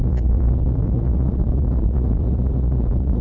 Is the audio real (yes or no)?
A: no